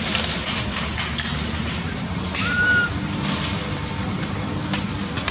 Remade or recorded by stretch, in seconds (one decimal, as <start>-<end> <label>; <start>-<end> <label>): 0.0-1.3 recorded; 1.3-4.5 remade; 4.5-5.3 recorded